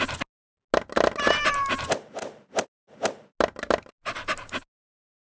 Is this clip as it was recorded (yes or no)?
yes